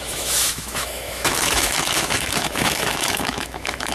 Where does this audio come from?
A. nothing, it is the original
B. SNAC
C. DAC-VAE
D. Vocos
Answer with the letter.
C